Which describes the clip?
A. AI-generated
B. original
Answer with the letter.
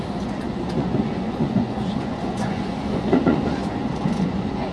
A